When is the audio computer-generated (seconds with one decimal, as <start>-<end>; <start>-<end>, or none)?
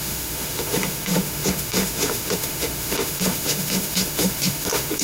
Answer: 0.0-5.0